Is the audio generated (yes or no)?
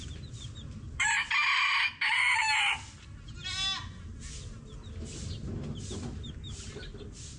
no